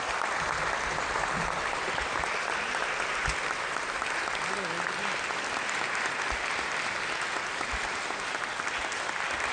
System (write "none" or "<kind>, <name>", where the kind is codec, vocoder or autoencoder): none